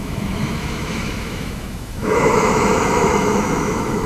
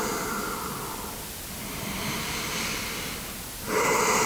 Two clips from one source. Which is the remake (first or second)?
first